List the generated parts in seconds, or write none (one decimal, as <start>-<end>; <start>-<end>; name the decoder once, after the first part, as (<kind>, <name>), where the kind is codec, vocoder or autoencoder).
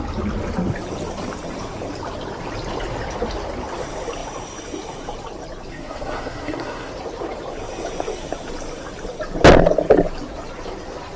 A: 5.7-6.9 (codec, SNAC)